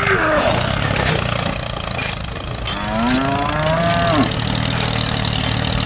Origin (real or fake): real